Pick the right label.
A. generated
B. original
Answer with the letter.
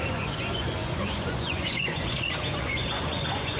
A